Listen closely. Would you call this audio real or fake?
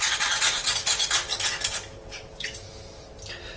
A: real